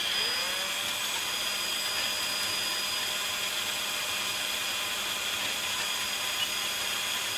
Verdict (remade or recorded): recorded